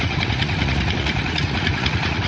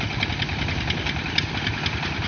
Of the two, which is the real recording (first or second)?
second